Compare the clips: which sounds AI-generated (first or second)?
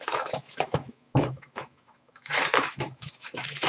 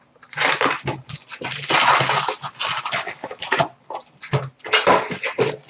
first